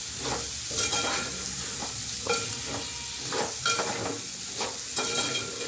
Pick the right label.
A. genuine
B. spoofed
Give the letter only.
A